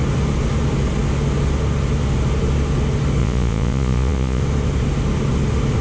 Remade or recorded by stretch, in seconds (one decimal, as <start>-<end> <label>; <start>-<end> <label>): 0.0-3.2 recorded; 3.2-4.4 remade; 4.4-5.8 recorded